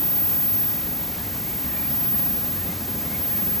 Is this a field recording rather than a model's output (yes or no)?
yes